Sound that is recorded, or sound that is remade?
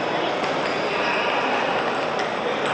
recorded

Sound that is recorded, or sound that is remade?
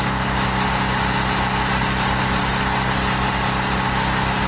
recorded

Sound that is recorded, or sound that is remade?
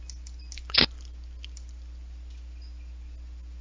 recorded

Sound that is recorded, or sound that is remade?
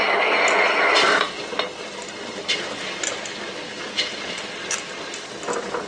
recorded